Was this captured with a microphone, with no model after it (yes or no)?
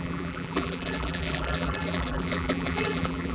no